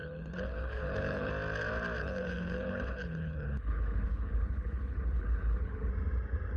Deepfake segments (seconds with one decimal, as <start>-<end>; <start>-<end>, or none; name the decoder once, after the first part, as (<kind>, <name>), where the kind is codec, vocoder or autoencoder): 0.0-1.3 (codec, HILCodec); 2.0-5.9